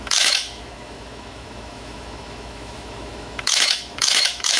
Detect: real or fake fake